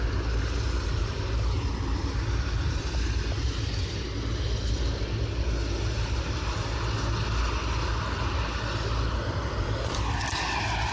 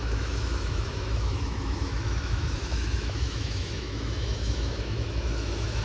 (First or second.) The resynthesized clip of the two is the second